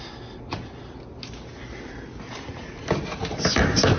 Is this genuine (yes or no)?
yes